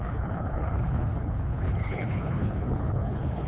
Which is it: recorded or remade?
remade